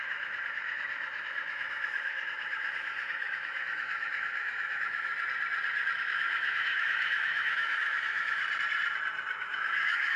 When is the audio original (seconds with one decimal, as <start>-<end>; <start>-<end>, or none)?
5.1-6.0; 8.4-9.4